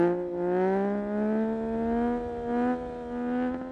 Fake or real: real